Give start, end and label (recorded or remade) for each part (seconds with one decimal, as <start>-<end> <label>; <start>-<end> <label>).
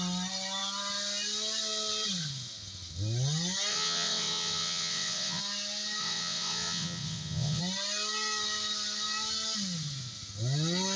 0.0-3.7 recorded; 3.7-5.4 remade; 5.4-6.0 recorded; 6.0-7.6 remade; 7.6-11.0 recorded